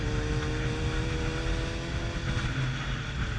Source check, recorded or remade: recorded